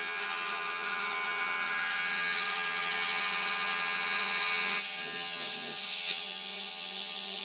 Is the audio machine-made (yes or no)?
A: yes